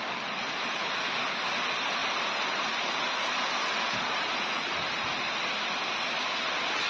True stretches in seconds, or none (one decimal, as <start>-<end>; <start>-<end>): 0.0-6.9